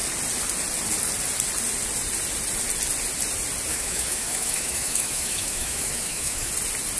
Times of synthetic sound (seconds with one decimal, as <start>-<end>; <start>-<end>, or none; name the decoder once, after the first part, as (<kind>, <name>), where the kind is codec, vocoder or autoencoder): 3.7-6.5 (autoencoder, DAC-VAE)